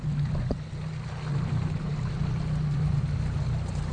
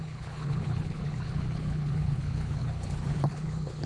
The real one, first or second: first